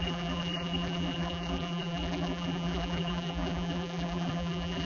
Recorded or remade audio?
remade